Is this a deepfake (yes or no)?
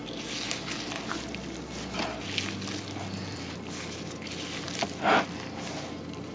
no